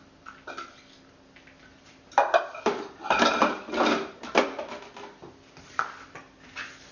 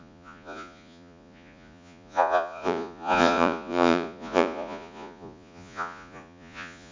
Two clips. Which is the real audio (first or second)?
first